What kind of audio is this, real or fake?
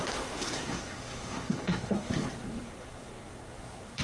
fake